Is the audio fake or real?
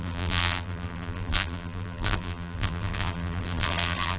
fake